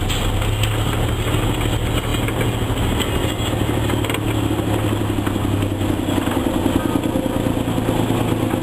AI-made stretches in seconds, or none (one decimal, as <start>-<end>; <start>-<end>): none